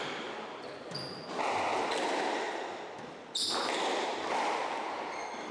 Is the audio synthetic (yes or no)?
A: no